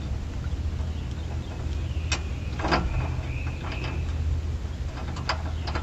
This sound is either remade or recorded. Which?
recorded